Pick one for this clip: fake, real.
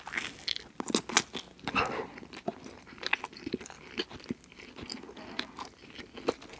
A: real